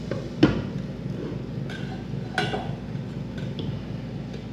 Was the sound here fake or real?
real